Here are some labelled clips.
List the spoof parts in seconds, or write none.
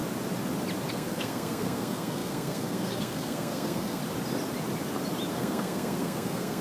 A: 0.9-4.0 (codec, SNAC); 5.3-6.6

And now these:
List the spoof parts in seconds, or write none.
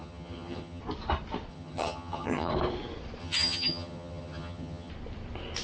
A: 0.0-0.8 (vocoder, HiFi-GAN); 1.5-2.5; 3.2-4.9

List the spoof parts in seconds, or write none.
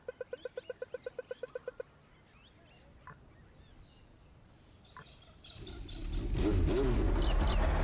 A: none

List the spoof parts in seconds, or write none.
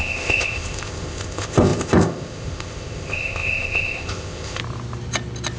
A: 0.0-4.6 (codec, ZipCodec)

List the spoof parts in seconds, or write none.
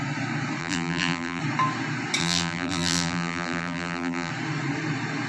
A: 0.6-1.4 (vocoder, BigVGAN v2); 2.2-4.3